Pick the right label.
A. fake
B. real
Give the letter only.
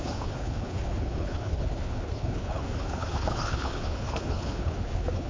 A